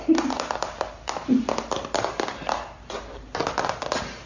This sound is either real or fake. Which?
real